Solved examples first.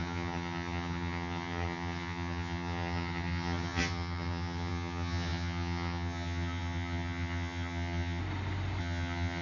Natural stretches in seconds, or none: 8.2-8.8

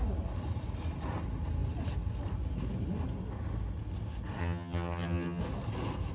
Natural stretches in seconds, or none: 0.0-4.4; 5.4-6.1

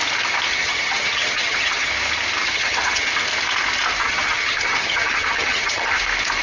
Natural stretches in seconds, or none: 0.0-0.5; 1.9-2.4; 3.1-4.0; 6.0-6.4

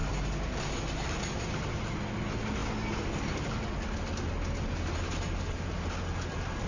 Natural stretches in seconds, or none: 0.0-6.7

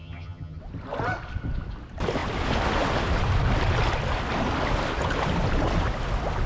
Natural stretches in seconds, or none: 0.6-6.5